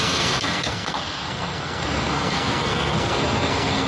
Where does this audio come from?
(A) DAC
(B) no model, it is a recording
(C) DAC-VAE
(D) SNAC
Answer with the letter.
D